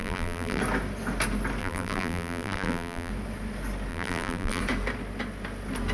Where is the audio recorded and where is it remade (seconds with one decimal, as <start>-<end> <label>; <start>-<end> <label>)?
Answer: 0.0-0.6 remade; 0.6-1.6 recorded; 1.6-3.1 remade; 3.1-3.9 recorded; 3.9-4.6 remade; 4.6-5.9 recorded